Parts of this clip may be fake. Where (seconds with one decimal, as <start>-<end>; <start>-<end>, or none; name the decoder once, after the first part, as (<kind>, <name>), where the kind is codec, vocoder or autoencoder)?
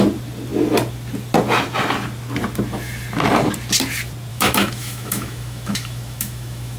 4.3-6.8 (autoencoder, DAC-VAE)